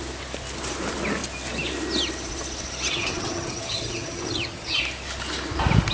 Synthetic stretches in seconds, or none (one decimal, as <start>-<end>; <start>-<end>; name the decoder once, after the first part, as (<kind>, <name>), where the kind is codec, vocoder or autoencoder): 2.9-4.8 (vocoder, HiFi-GAN)